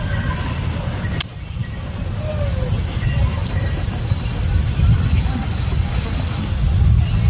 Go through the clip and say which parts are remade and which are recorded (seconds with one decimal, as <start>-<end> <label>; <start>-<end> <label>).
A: 0.0-3.3 recorded; 3.3-6.4 remade; 6.4-7.3 recorded